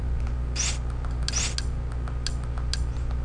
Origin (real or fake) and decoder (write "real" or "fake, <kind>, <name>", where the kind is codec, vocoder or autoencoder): real